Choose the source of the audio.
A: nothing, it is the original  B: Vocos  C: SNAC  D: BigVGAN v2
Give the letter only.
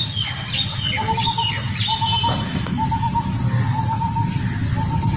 A